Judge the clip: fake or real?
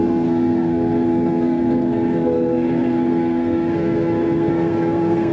fake